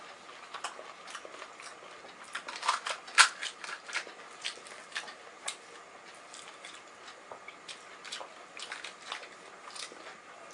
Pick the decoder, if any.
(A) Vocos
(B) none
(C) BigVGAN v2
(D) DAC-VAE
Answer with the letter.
B